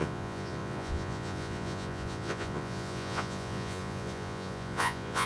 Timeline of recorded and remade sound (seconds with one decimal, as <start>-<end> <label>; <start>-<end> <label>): 0.0-5.3 remade